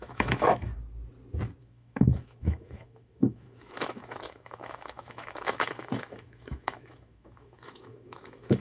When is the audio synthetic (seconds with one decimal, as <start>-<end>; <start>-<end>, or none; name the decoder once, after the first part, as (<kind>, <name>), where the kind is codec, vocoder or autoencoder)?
0.0-0.7 (autoencoder, DAC-VAE); 1.6-8.6